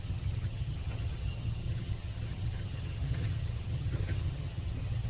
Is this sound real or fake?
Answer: fake